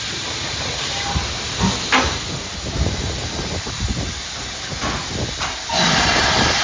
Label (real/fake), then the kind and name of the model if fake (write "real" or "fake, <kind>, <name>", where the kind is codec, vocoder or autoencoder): real